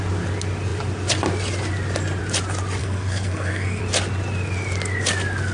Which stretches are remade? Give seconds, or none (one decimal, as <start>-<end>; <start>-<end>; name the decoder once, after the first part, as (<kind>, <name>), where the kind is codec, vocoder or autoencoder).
2.8-3.8 (codec, SNAC)